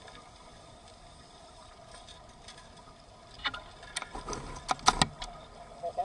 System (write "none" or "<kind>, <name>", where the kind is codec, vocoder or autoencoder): none